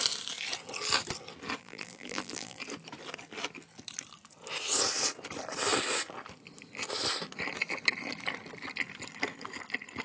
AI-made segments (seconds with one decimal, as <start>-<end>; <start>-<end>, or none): 1.6-2.6